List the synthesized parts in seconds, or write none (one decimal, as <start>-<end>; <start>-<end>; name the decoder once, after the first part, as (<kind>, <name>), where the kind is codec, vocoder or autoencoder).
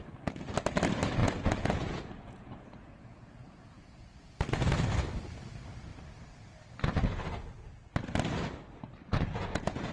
1.2-4.3 (vocoder, Vocos); 9.1-9.9